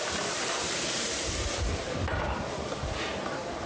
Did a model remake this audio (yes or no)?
yes